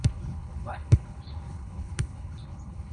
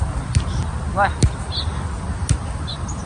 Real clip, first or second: second